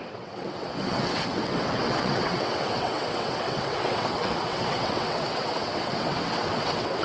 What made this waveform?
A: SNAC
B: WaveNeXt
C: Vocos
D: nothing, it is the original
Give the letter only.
B